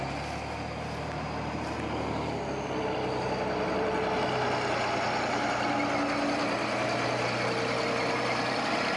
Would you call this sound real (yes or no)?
yes